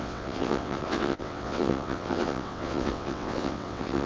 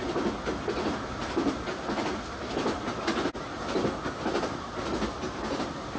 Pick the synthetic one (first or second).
first